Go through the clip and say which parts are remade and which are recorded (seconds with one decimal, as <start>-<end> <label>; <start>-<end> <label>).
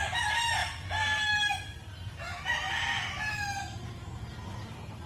0.0-5.1 recorded